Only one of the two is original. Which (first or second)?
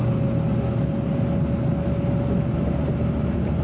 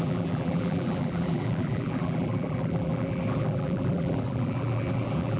first